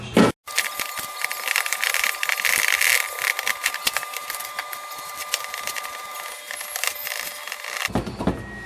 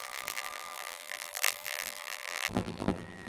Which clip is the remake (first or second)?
second